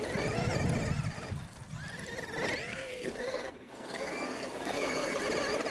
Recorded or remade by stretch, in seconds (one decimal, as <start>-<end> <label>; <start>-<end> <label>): 0.0-2.7 recorded; 2.7-5.2 remade; 5.2-5.7 recorded